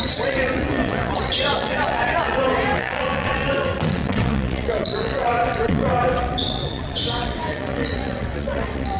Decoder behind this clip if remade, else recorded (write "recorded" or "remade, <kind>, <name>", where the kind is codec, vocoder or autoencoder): remade, vocoder, WaveNeXt